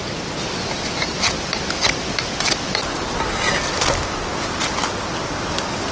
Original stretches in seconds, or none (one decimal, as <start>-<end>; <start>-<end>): 0.0-5.9